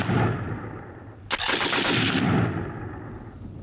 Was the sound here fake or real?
real